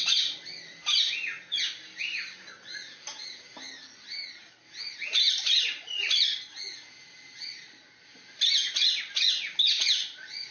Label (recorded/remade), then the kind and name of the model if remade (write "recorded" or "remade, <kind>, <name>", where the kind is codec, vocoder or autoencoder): recorded